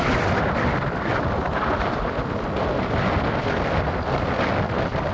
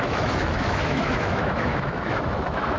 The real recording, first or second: first